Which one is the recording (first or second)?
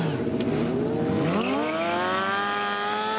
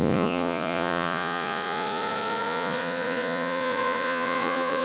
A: first